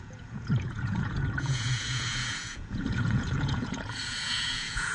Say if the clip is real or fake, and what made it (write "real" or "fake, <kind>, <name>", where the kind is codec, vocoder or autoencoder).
fake, vocoder, Vocos